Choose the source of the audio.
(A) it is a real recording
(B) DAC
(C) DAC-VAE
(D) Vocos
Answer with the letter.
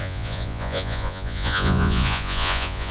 D